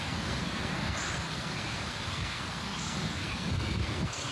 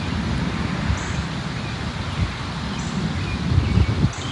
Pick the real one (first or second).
second